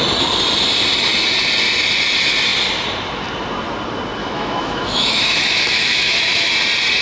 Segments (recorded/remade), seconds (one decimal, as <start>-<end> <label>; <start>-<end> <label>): 0.0-4.2 recorded; 4.2-6.5 remade; 6.5-7.0 recorded